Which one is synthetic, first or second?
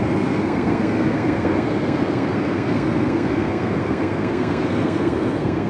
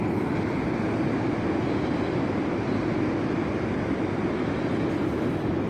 first